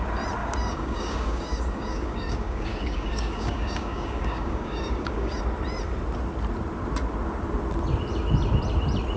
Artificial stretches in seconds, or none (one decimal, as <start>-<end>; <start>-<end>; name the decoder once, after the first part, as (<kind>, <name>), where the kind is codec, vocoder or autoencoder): 0.4-5.4 (codec, DAC)